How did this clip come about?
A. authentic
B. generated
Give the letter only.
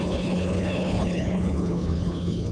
B